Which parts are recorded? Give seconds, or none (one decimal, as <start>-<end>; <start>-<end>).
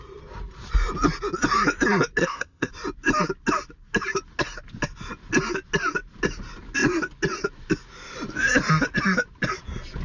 0.0-2.2; 2.7-10.0